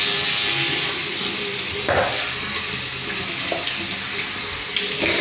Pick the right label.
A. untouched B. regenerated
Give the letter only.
A